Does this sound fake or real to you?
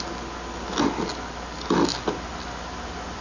real